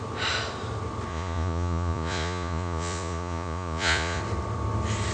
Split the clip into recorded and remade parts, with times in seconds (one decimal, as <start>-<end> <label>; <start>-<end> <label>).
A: 0.0-1.1 recorded; 1.1-4.2 remade; 4.2-5.1 recorded